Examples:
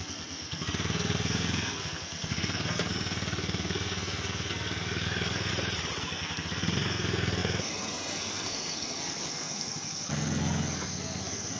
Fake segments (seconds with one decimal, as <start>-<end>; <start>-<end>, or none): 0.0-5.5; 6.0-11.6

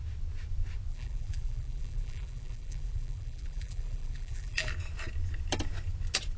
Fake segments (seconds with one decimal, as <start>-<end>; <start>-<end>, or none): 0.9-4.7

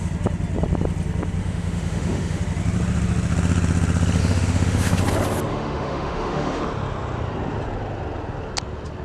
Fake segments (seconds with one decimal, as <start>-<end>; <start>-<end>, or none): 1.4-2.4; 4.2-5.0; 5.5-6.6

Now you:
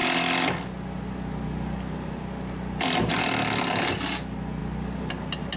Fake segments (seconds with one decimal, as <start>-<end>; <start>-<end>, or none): none